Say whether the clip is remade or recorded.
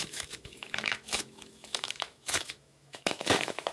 remade